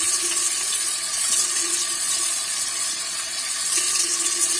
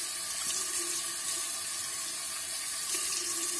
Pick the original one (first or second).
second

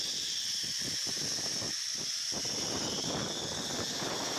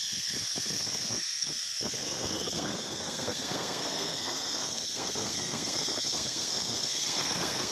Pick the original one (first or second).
first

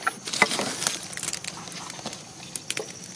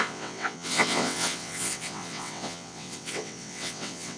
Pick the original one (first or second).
first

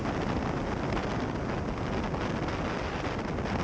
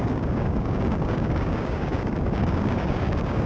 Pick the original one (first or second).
first